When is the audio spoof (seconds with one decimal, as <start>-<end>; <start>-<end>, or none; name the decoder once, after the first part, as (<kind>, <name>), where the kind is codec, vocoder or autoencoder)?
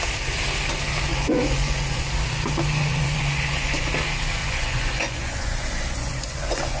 1.1-2.1 (vocoder, Vocos); 2.8-3.9; 4.4-6.8